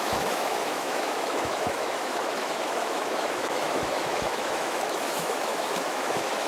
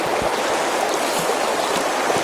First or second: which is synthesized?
first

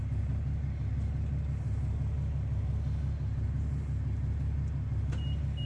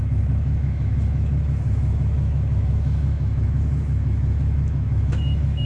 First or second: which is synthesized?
second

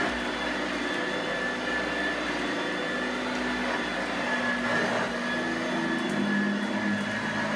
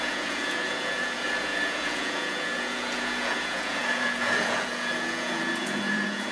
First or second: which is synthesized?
second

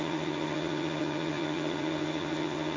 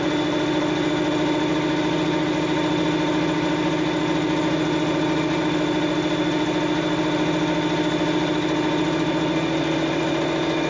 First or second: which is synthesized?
first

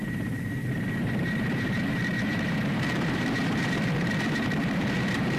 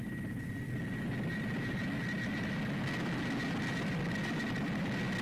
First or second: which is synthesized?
first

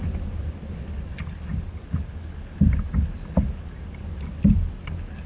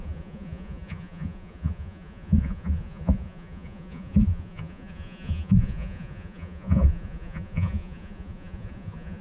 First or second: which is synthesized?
second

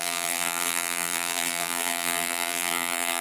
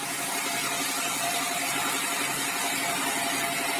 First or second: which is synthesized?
first